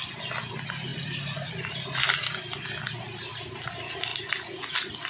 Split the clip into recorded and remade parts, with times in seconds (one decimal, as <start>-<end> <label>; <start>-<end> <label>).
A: 0.0-5.1 recorded